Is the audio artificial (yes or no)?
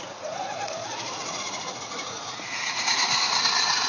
yes